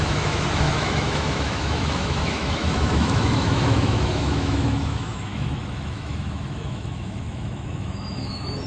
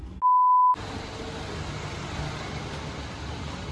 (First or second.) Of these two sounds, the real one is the second